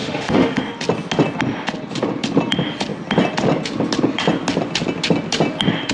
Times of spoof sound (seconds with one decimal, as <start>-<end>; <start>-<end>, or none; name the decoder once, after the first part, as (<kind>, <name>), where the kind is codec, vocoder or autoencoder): 0.0-0.6 (autoencoder, DAC-VAE)

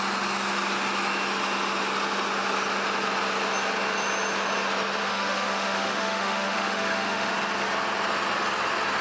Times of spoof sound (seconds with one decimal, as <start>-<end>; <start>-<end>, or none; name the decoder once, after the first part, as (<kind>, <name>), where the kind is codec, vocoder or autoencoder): 5.0-7.3 (autoencoder, DAC-VAE)

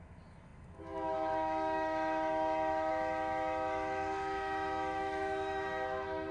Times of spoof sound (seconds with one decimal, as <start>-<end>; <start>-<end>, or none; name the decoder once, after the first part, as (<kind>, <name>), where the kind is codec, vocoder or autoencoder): 0.0-6.3 (autoencoder, DAC-VAE)